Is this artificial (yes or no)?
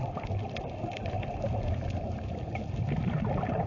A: yes